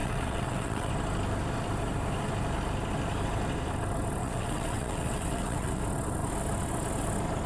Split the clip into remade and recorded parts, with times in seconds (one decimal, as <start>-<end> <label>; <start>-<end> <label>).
0.0-0.9 remade; 0.9-4.2 recorded; 4.2-5.8 remade; 5.8-7.5 recorded